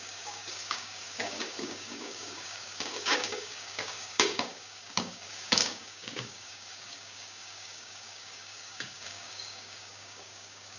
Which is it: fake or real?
fake